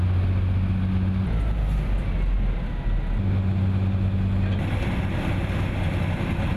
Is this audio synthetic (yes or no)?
no